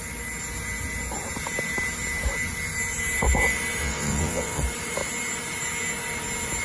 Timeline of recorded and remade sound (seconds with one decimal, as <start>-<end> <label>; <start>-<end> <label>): 0.0-3.8 recorded; 3.8-4.6 remade; 4.6-6.6 recorded